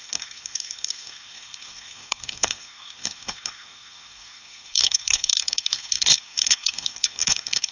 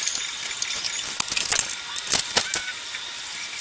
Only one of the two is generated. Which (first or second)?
first